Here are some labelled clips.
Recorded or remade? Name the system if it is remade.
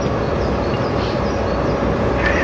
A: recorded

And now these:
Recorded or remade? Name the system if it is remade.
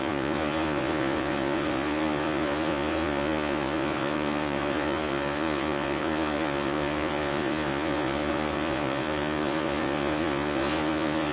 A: remade, vocoder, Vocos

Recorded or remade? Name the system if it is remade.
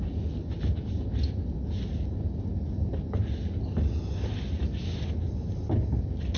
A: recorded